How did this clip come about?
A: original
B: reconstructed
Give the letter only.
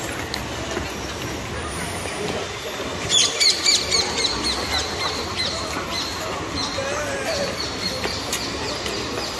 A